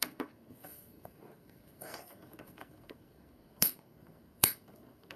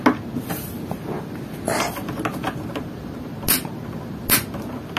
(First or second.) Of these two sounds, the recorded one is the second